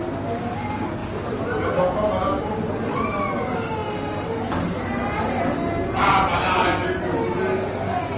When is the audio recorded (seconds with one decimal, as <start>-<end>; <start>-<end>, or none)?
0.0-8.2

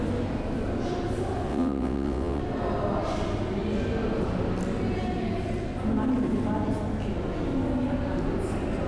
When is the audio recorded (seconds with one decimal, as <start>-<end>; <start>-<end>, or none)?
0.0-1.5; 2.4-8.9